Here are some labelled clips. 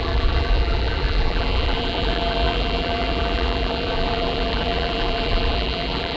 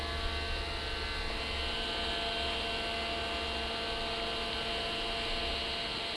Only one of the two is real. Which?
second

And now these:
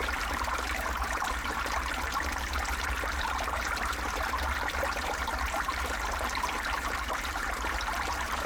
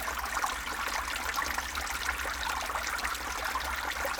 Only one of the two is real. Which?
second